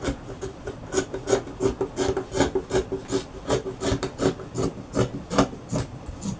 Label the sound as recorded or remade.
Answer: recorded